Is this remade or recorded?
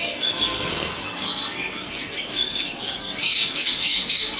remade